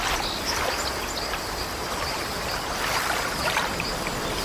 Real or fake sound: fake